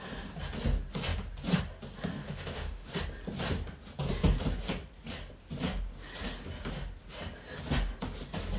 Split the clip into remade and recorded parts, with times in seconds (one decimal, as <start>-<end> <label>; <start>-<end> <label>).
0.0-2.2 recorded; 2.2-2.9 remade; 2.9-8.6 recorded

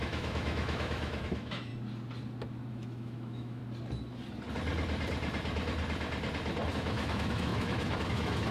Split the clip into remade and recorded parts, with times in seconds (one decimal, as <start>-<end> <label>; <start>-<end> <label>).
0.0-1.7 remade; 1.7-2.7 recorded; 2.7-3.6 remade; 3.6-6.7 recorded; 6.7-8.5 remade

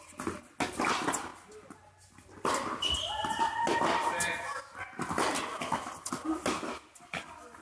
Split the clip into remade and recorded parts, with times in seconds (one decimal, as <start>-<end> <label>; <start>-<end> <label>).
0.0-7.6 recorded

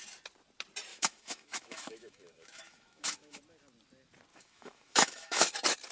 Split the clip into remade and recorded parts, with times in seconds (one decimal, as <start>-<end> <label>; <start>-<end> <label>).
0.0-0.9 recorded; 0.9-3.4 remade; 3.4-4.3 recorded; 4.3-5.5 remade; 5.5-5.9 recorded

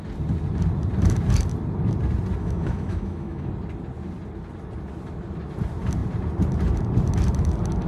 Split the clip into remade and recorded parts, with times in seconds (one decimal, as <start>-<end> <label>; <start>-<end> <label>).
0.0-2.4 recorded; 2.4-3.5 remade; 3.5-7.9 recorded